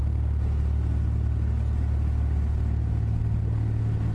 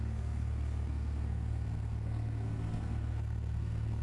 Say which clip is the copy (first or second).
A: second